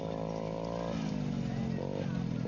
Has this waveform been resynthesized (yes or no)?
no